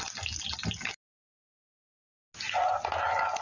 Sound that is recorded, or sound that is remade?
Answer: recorded